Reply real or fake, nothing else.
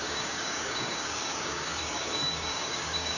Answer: fake